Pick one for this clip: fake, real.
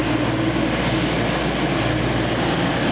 real